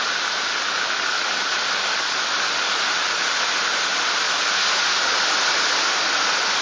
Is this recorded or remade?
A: recorded